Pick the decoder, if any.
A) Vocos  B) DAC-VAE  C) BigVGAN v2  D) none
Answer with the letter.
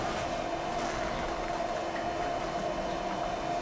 D